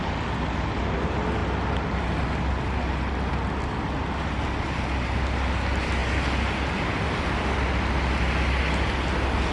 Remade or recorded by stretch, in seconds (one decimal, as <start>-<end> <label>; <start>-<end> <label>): 0.0-9.5 recorded